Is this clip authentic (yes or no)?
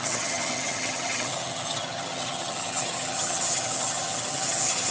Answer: no